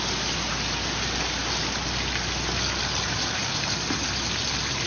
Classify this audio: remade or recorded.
recorded